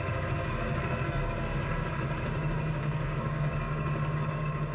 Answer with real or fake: fake